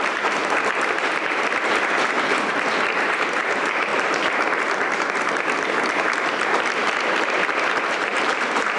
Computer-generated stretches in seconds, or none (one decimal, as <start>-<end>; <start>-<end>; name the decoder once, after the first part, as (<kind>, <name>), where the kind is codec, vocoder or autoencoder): 0.0-0.4 (vocoder, BigVGAN v2); 1.0-3.9; 7.8-8.8